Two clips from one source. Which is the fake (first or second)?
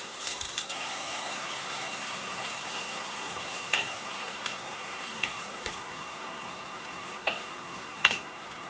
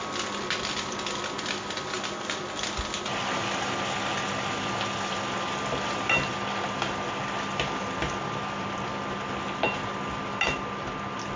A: first